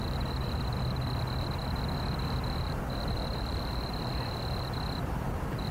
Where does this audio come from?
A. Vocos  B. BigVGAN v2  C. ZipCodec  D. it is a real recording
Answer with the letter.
B